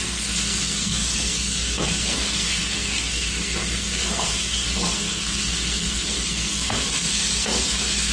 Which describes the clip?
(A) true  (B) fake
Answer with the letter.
B